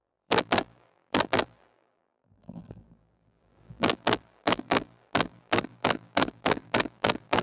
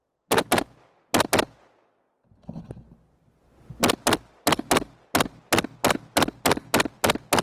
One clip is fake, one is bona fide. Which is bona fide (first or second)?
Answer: second